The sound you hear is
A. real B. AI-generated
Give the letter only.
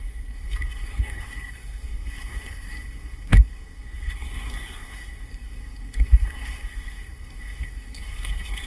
B